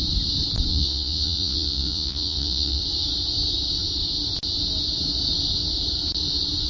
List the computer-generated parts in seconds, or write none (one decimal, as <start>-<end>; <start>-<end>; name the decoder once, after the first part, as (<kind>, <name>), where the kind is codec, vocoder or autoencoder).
0.7-2.8 (vocoder, Vocos)